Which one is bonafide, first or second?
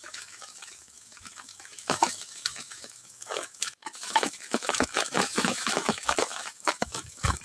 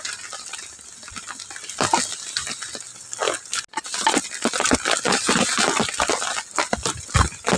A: second